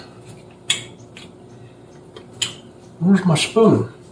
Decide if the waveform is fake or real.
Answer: real